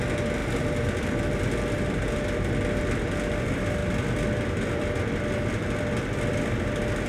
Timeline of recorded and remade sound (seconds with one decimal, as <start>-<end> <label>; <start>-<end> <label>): 0.0-0.4 recorded; 0.4-1.4 remade; 1.4-3.8 recorded; 3.8-5.8 remade; 5.8-7.1 recorded